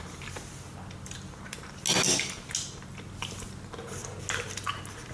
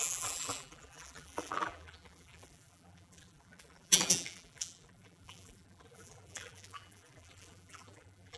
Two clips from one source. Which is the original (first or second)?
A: first